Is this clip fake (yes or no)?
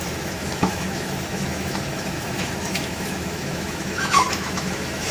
yes